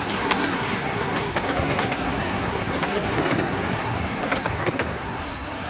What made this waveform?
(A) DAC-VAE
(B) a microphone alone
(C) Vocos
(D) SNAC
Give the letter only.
D